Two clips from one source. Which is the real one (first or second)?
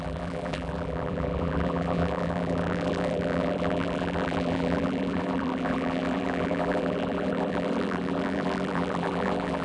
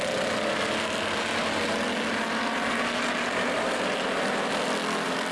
second